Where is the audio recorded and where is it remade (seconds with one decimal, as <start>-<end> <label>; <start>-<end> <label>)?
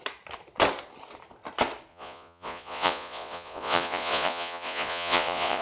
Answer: 0.0-1.9 recorded; 1.9-5.6 remade